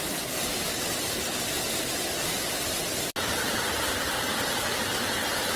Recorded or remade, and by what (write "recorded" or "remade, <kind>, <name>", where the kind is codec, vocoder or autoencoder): recorded